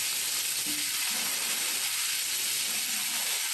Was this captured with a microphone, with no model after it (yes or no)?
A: yes